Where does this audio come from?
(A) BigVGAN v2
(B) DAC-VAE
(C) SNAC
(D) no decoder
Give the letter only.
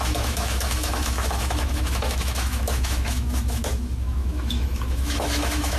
B